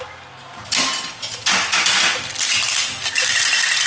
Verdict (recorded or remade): recorded